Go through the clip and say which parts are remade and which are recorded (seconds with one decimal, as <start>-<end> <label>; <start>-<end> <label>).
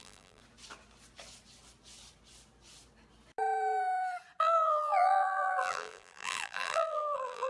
0.0-0.4 remade; 0.4-4.4 recorded; 4.4-7.5 remade